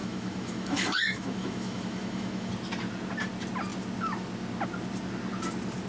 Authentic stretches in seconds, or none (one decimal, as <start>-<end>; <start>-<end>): 2.5-5.9